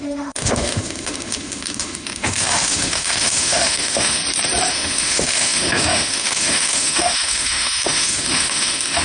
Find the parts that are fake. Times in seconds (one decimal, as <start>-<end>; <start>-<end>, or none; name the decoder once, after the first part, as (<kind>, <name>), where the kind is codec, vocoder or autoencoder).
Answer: 0.0-4.2 (autoencoder, DAC-VAE); 4.7-9.0